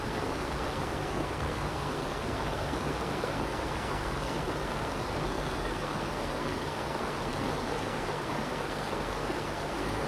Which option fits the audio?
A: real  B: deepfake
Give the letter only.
B